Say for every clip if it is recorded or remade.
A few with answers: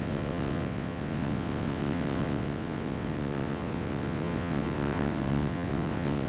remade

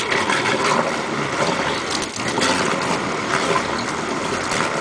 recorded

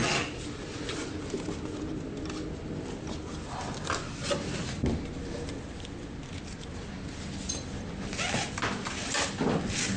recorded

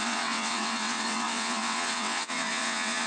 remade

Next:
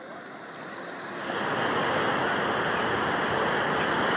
recorded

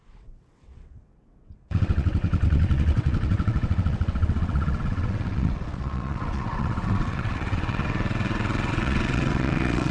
remade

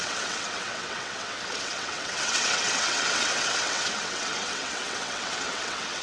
remade